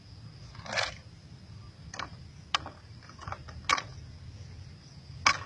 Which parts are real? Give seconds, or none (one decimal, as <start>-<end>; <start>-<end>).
0.0-5.5